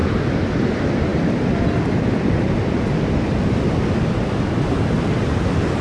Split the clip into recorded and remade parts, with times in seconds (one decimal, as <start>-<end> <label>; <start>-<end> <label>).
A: 0.0-0.7 remade; 0.7-1.1 recorded; 1.1-3.9 remade; 3.9-5.8 recorded